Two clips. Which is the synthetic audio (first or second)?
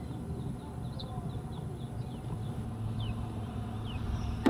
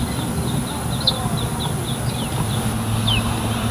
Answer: first